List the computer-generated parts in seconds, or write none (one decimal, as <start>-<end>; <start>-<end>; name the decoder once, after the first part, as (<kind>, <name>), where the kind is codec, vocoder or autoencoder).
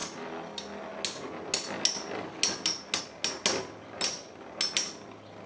none